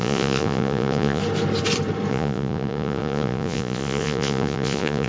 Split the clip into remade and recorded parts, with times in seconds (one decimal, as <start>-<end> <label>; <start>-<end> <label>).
0.0-1.2 remade; 1.2-2.1 recorded; 2.1-5.1 remade